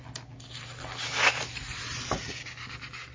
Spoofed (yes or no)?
no